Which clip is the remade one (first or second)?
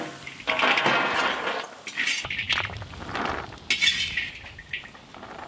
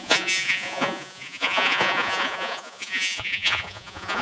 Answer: second